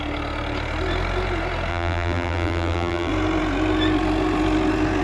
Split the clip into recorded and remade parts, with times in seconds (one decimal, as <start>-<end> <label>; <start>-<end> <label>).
0.0-1.7 recorded; 1.7-3.1 remade; 3.1-5.0 recorded